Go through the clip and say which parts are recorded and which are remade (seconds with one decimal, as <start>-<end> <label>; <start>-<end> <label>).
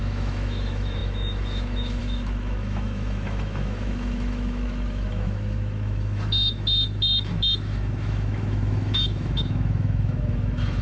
0.0-10.8 remade